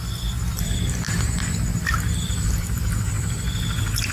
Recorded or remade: remade